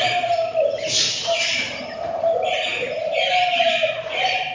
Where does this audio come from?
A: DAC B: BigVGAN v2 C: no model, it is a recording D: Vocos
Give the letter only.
B